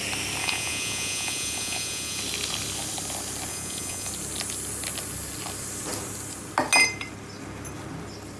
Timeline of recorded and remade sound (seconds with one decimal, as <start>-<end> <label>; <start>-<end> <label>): 0.0-0.4 recorded; 0.4-2.2 remade; 2.2-3.5 recorded; 3.5-4.1 remade; 4.1-8.4 recorded